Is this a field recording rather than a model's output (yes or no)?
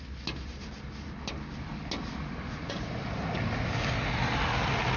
yes